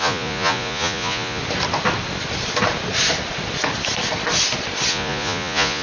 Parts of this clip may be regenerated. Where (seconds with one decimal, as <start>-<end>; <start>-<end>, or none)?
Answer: 0.0-1.4; 4.9-5.8